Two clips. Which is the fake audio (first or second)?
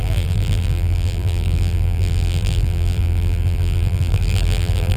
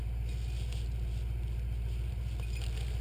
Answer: first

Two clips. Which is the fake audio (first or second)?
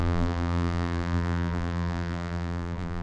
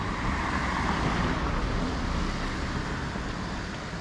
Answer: first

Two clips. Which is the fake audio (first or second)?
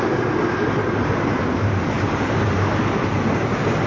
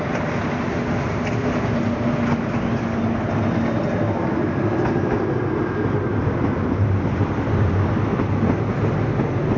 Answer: first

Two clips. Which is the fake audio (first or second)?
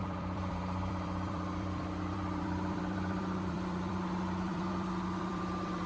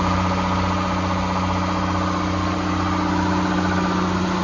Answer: first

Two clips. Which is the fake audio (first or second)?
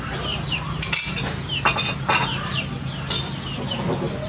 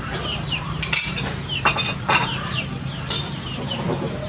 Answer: second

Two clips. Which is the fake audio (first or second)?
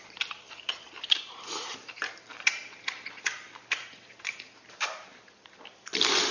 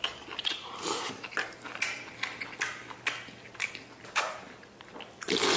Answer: first